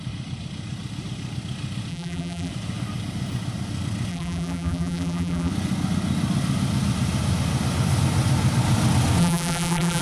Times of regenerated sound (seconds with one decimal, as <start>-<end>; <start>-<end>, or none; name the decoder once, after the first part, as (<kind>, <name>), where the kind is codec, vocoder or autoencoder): 1.9-2.5 (vocoder, BigVGAN v2); 4.1-5.5; 9.2-10.0